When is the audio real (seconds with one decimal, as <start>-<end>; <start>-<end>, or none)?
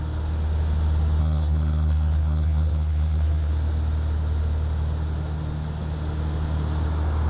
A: 0.0-1.2; 3.5-7.3